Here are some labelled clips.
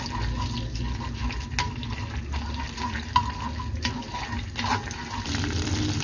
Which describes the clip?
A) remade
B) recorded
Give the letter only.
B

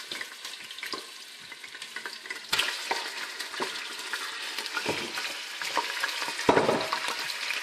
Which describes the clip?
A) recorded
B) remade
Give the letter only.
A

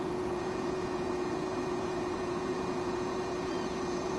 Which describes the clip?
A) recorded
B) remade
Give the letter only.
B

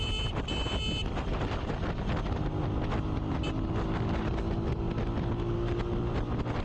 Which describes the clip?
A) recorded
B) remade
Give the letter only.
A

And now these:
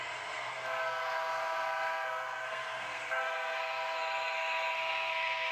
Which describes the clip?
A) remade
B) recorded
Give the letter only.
A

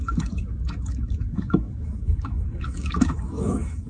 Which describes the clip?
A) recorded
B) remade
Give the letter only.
B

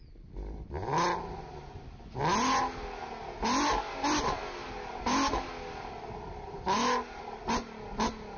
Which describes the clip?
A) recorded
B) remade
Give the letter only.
A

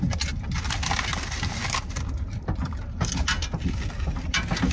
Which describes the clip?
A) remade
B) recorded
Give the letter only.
B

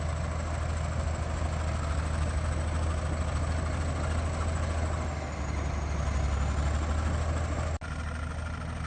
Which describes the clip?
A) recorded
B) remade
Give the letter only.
A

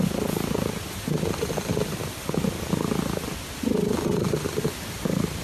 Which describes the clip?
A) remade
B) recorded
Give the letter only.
B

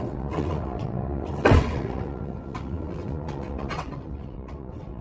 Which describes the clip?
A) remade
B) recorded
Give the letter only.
A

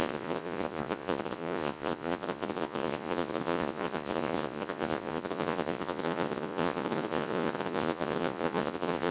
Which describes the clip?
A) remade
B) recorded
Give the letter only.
A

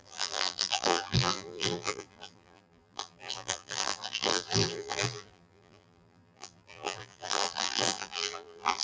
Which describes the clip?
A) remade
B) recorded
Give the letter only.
A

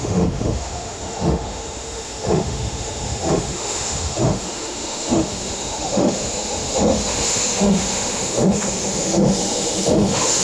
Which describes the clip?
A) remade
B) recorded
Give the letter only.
A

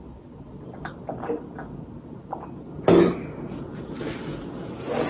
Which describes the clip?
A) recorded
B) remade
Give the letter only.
A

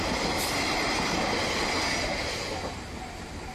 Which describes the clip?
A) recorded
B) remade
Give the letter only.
A